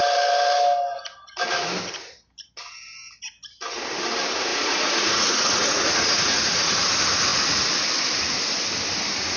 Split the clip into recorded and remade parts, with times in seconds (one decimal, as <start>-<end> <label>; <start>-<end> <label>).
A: 0.0-4.5 recorded; 4.5-6.7 remade; 6.7-9.4 recorded